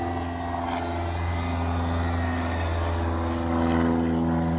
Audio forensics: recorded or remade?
recorded